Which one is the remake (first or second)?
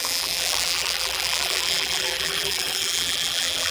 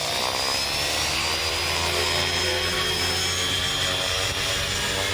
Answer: first